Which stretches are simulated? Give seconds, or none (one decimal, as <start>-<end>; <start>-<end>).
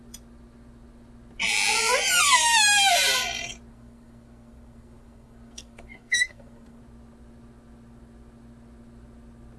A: 3.7-6.8